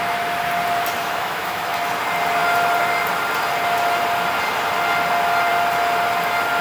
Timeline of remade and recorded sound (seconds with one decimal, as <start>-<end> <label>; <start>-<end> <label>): 0.0-1.0 recorded; 1.0-1.9 remade; 1.9-6.6 recorded